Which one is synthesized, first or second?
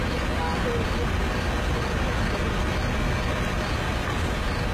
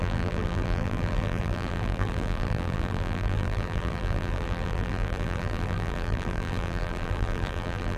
second